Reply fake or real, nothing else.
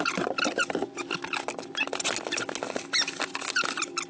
real